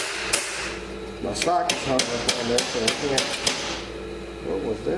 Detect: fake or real real